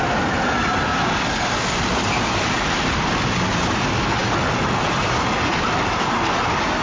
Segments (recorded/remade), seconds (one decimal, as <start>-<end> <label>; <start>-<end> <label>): 0.0-6.8 recorded